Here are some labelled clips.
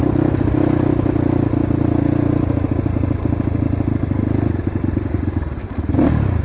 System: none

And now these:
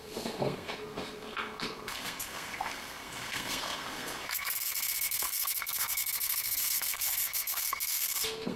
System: codec, SNAC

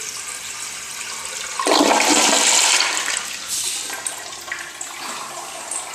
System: none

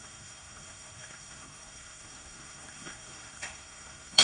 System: codec, SNAC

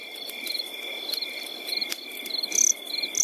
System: none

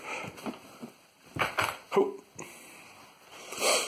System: none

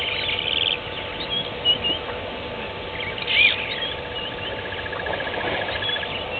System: none